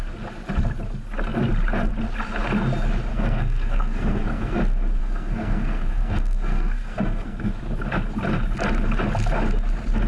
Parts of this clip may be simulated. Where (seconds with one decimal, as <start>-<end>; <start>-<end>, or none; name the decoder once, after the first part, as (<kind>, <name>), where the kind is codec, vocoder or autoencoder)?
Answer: 3.1-4.6 (codec, SNAC); 5.0-7.5